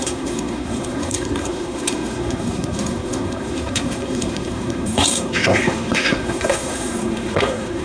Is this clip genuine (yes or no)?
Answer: no